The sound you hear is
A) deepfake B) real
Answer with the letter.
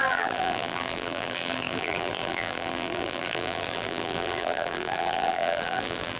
A